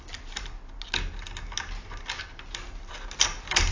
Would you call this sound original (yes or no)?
yes